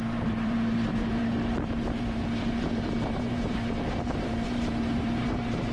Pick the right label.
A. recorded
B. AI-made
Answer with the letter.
B